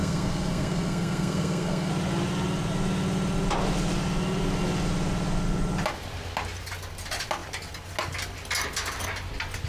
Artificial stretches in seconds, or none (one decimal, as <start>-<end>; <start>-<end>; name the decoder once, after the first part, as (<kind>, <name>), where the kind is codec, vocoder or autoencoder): 0.0-1.9 (codec, SNAC)